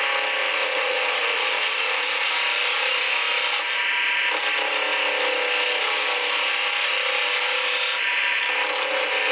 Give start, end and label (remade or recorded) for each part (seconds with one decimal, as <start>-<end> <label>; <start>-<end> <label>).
0.0-0.4 recorded; 0.4-2.3 remade; 2.3-9.3 recorded